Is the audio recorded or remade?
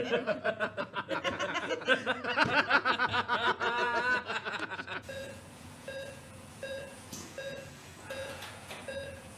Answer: remade